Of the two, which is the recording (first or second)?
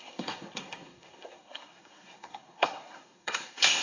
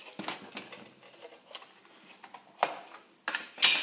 second